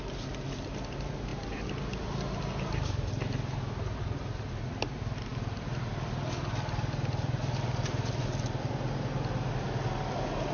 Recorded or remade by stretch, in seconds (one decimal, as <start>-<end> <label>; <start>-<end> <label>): 0.0-10.5 recorded